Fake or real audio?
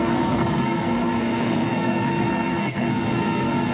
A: fake